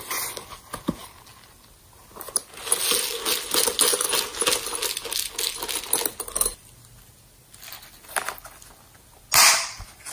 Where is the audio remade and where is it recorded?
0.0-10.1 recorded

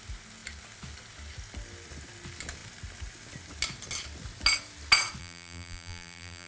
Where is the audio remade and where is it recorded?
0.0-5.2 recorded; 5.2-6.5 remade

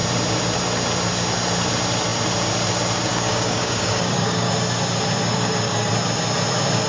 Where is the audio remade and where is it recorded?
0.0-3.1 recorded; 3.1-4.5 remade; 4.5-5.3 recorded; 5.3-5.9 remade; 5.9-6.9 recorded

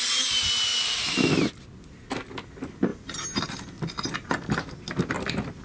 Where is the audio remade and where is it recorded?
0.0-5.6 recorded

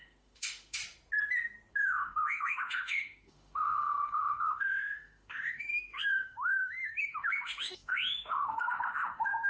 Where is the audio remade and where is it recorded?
0.0-0.8 remade; 0.8-1.7 recorded; 1.7-9.5 remade